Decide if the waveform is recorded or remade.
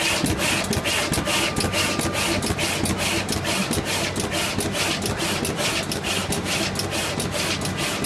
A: recorded